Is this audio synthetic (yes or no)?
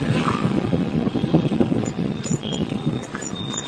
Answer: yes